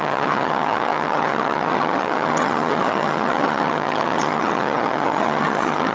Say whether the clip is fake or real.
fake